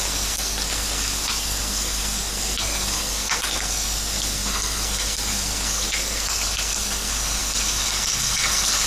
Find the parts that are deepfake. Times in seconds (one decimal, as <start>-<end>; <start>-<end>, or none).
0.0-8.9